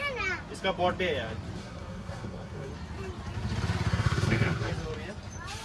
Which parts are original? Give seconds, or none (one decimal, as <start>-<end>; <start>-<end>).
0.0-1.6; 2.7-3.9; 4.7-5.6